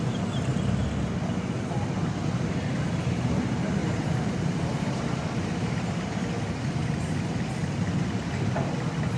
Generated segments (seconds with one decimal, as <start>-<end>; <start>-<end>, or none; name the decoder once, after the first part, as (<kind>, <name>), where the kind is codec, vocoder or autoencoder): 3.8-5.0 (vocoder, BigVGAN v2)